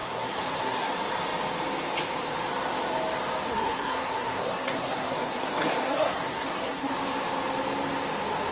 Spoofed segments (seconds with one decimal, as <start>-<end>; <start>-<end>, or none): 0.0-0.9; 3.5-6.9